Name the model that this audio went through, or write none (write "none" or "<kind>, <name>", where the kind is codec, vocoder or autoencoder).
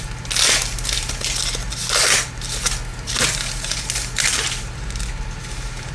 none